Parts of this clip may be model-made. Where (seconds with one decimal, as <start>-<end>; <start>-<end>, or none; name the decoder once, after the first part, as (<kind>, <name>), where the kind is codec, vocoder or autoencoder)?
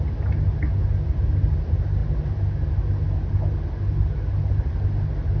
none